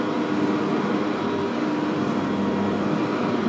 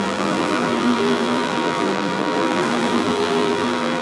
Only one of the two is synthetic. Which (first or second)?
second